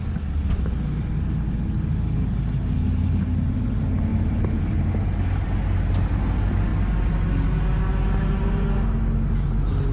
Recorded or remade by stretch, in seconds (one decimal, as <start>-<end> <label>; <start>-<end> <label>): 0.0-4.1 recorded; 4.1-4.8 remade; 4.8-9.9 recorded